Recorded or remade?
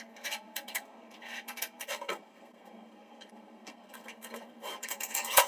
remade